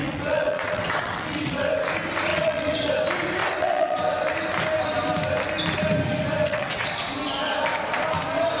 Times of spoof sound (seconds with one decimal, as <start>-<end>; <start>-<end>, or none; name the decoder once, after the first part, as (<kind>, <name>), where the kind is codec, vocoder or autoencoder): 0.0-1.7 (vocoder, WaveNeXt); 2.3-2.9; 3.4-4.0; 6.4-6.9